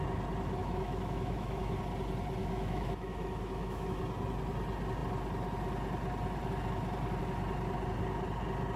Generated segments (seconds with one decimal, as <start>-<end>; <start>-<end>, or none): 0.6-1.8; 2.4-4.0